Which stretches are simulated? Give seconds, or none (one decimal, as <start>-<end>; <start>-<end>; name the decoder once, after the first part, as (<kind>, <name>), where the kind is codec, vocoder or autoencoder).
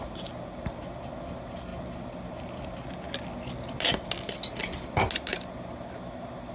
none